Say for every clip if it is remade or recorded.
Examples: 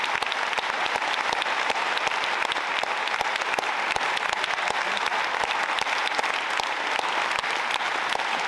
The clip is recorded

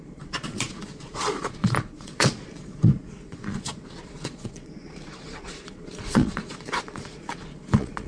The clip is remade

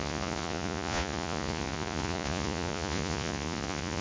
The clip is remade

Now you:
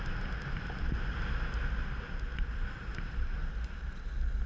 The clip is recorded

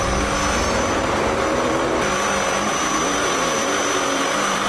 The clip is recorded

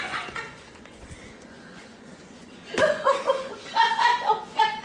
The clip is remade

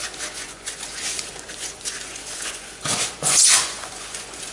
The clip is remade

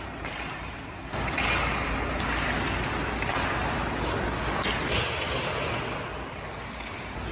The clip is recorded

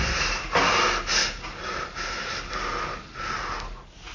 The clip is recorded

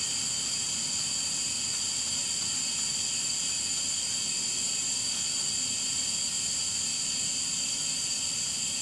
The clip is recorded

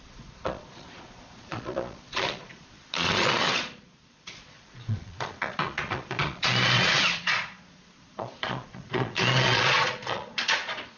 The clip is remade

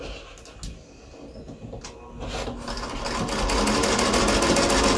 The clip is recorded